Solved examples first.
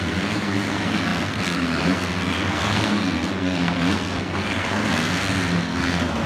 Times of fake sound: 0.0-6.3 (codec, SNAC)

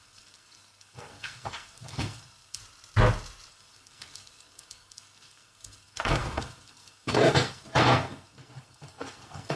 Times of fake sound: 0.0-2.6 (codec, SNAC); 3.5-9.6

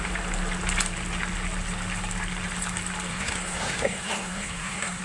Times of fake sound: 3.1-5.0 (codec, SNAC)

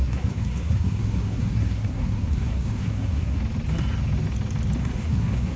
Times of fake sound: 0.0-3.4 (codec, SNAC); 4.8-5.6

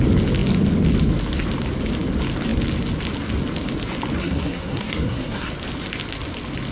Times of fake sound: 4.2-5.5 (codec, SNAC)

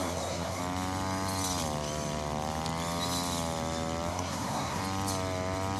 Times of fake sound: 0.0-0.6 (codec, SNAC); 4.1-4.8

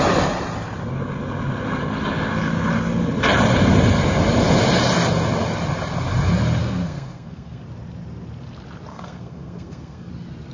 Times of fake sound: 6.6-7.6 (codec, SNAC); 8.9-10.1

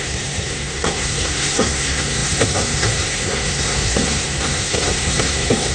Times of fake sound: 0.0-5.7 (codec, SNAC)